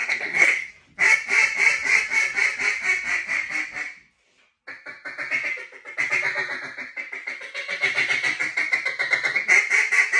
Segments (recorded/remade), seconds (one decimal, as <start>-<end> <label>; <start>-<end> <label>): 0.0-0.7 remade; 0.7-10.2 recorded